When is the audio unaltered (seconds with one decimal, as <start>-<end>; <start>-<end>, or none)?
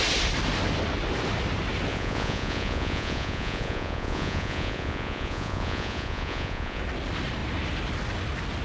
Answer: 0.0-1.9; 6.8-8.6